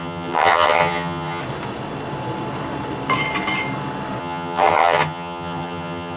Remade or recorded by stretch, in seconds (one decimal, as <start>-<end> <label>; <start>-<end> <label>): 0.0-1.4 remade; 1.4-4.2 recorded; 4.2-6.2 remade